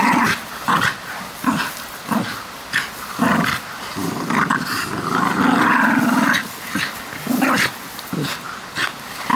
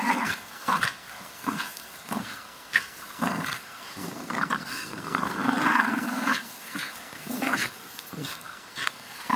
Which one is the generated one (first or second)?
second